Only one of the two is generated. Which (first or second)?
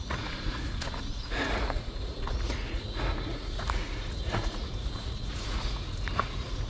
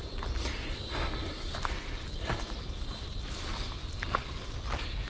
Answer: first